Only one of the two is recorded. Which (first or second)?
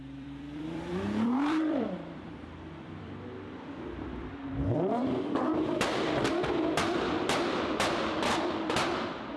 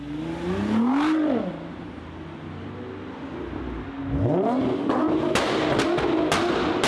second